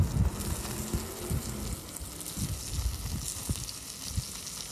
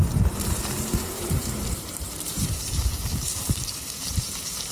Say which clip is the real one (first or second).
first